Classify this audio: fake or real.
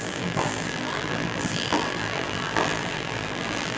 fake